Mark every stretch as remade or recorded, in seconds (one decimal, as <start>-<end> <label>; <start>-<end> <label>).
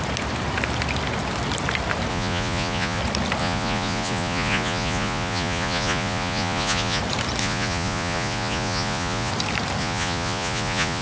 0.0-2.1 recorded; 2.1-3.0 remade; 3.0-3.4 recorded; 3.4-7.0 remade; 7.0-7.4 recorded; 7.4-9.3 remade; 9.3-9.8 recorded; 9.8-11.0 remade